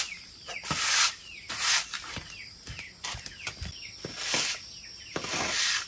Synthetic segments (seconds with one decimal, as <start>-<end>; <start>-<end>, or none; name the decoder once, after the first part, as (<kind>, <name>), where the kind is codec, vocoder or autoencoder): 0.0-5.9 (vocoder, BigVGAN v2)